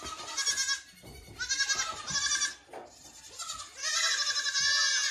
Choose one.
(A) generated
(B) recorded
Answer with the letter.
B